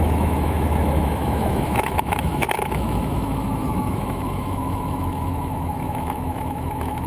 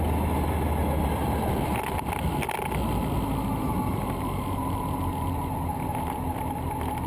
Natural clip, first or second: second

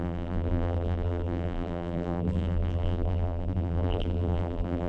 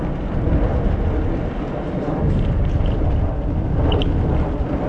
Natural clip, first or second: second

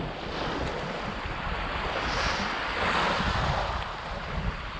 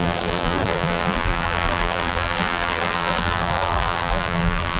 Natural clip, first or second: first